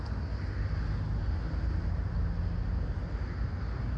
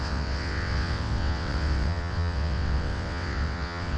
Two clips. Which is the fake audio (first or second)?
second